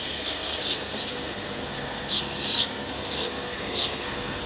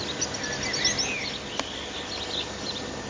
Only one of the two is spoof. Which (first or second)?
first